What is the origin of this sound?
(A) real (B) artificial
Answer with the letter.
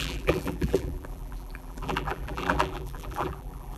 B